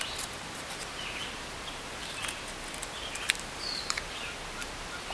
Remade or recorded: recorded